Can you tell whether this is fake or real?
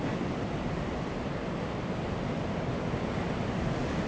real